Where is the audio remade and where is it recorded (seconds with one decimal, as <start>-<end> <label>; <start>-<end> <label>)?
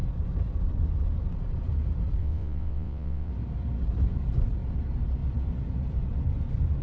0.0-2.2 recorded; 2.2-3.3 remade; 3.3-6.8 recorded